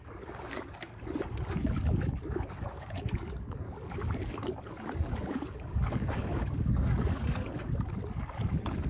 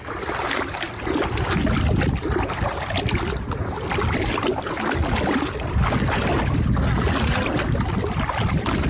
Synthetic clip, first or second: first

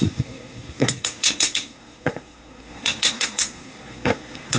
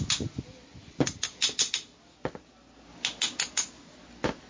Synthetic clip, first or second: first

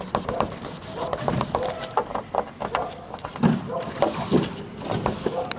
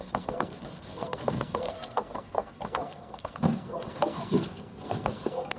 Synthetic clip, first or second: second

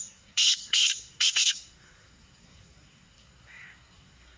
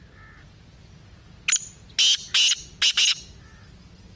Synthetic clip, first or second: first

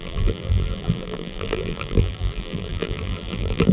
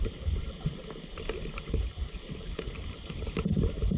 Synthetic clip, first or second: first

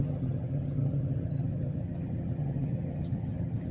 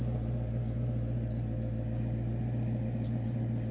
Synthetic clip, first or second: first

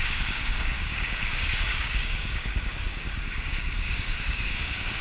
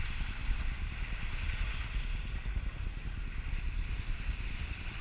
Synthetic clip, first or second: first